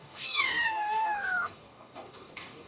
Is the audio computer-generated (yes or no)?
yes